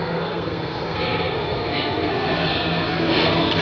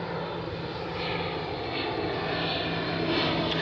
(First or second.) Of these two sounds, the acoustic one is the second